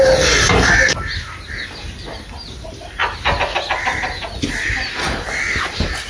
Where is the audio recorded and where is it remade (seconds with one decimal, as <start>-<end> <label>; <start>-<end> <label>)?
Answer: 0.0-6.1 recorded